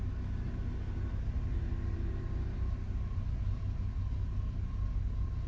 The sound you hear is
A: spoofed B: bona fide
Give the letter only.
B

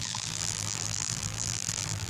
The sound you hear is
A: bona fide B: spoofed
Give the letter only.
B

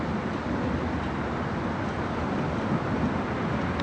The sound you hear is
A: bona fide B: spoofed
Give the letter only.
A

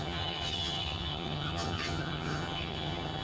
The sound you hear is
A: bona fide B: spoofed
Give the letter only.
B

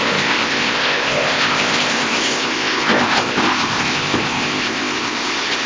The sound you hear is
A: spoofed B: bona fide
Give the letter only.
A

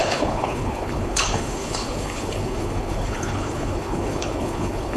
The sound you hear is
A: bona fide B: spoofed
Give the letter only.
B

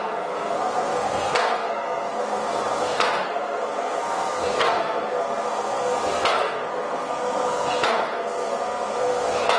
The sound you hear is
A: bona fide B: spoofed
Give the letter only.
B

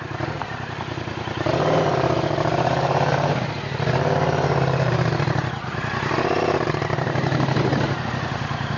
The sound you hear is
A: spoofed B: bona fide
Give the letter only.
A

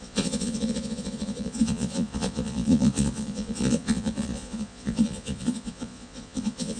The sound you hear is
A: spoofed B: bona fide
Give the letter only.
A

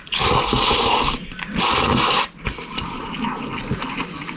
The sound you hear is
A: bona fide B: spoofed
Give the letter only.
A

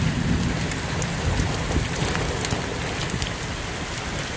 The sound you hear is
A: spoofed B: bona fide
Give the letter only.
B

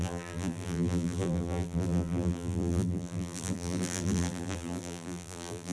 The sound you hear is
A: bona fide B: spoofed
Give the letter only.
B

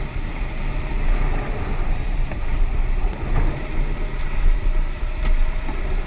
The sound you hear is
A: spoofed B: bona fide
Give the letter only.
B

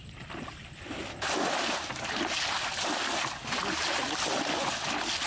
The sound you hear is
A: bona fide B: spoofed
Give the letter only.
A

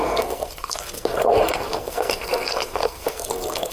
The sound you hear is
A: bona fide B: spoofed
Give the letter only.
B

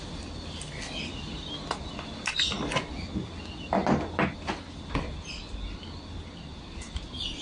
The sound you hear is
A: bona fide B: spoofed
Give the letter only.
A